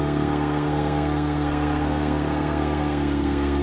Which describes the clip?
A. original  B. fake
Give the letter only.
B